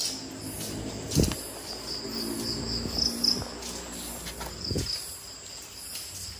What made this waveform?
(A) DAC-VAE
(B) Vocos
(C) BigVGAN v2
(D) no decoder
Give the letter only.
D